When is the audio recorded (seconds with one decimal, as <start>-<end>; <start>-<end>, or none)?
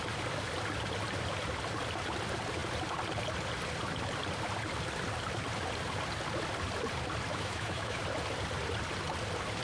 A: 0.0-7.3; 8.0-9.6